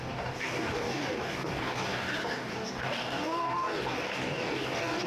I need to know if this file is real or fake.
fake